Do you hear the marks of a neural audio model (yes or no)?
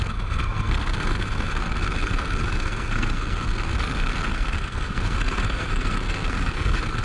yes